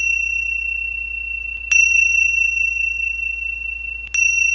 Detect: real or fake real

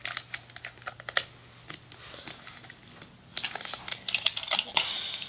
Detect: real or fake real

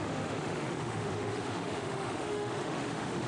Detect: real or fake fake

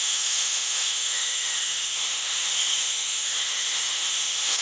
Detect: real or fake fake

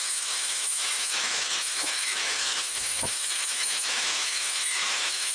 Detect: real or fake fake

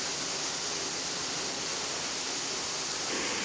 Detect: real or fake real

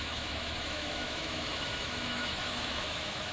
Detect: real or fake fake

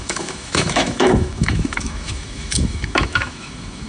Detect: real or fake fake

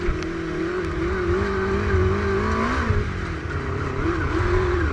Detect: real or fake real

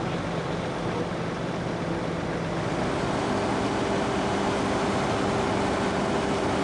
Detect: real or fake real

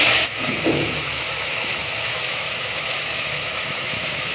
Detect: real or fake fake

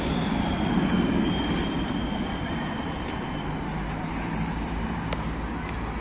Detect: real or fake real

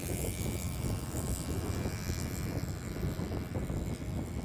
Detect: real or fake real